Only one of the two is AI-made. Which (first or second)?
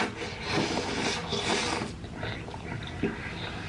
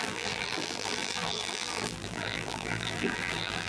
second